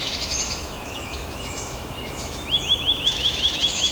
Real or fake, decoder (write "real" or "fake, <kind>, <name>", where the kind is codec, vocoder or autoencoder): fake, autoencoder, DAC-VAE